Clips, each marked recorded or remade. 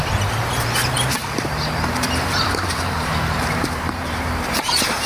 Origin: remade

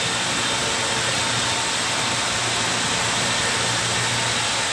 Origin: recorded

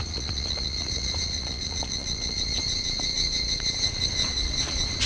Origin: remade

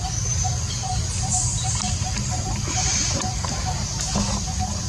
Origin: recorded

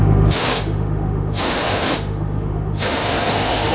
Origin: remade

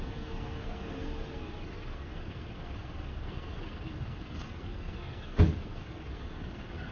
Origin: remade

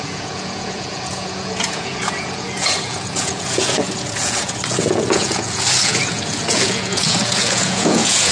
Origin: remade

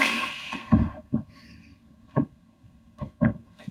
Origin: remade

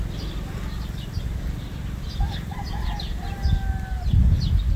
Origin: recorded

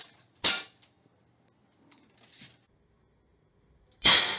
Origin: recorded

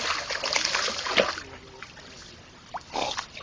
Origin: recorded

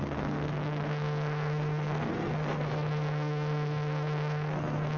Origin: remade